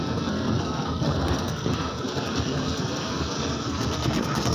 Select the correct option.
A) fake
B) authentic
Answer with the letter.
A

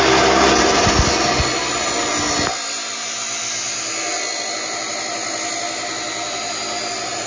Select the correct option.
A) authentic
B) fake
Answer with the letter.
A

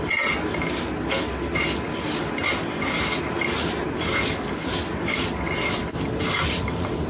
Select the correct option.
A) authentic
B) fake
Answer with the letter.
A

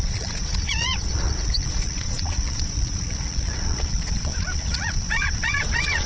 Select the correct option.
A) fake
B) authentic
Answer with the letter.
A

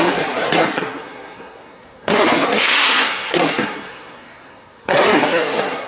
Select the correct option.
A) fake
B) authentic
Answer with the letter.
A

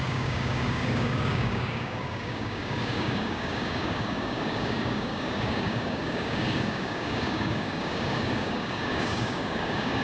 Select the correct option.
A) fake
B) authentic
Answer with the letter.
A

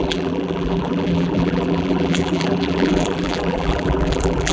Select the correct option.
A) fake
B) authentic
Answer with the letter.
A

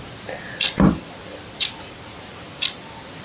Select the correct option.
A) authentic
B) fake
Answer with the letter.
A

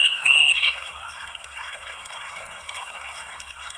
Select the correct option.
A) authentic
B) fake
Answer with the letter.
B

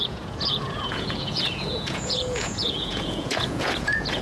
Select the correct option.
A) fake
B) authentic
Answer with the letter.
A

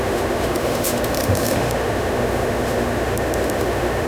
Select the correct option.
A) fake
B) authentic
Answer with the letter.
A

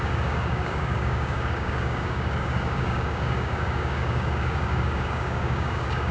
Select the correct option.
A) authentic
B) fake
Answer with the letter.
B